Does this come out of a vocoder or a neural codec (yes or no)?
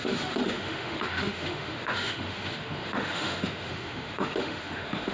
yes